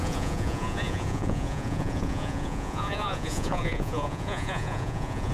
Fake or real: fake